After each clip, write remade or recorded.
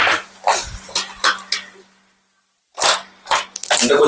recorded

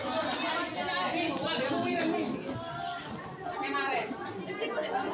recorded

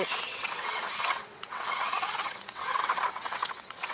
remade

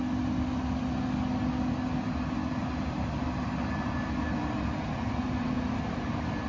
recorded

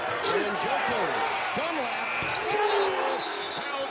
recorded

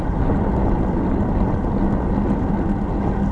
recorded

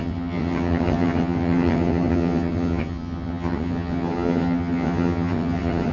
remade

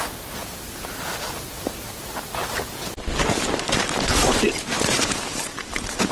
recorded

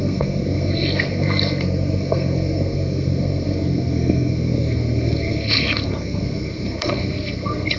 remade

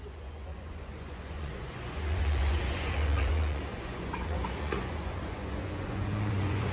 remade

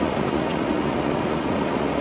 remade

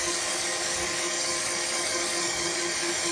remade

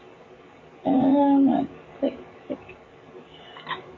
remade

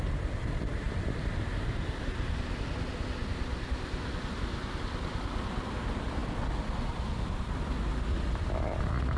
recorded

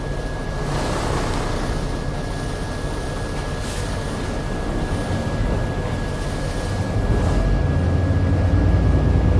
recorded